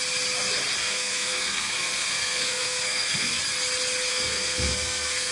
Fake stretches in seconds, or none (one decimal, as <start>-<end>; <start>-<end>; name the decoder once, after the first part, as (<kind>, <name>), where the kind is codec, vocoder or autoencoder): 0.8-3.4 (codec, SNAC); 4.1-5.3